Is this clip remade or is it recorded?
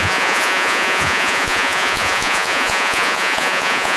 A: remade